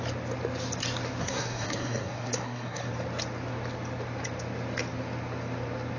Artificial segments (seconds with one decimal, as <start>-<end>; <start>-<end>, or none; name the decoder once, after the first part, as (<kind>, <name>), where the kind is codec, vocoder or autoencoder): 1.2-2.9 (codec, SNAC)